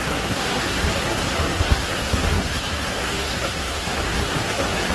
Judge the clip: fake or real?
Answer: fake